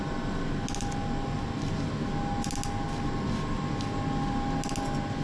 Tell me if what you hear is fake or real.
real